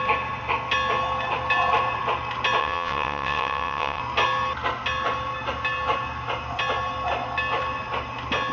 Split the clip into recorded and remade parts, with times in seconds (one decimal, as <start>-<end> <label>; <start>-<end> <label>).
0.0-2.6 recorded; 2.6-4.0 remade; 4.0-8.5 recorded